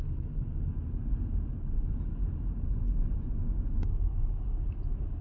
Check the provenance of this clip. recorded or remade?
recorded